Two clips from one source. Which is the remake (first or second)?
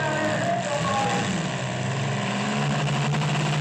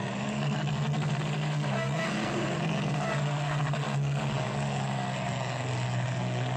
second